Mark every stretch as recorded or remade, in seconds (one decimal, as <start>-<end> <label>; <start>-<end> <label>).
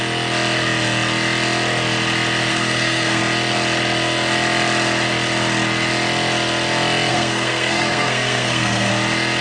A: 0.0-2.5 recorded; 2.5-3.2 remade; 3.2-7.1 recorded; 7.1-8.9 remade; 8.9-9.4 recorded